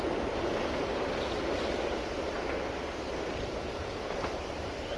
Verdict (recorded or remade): recorded